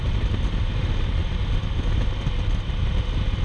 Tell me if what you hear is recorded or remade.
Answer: recorded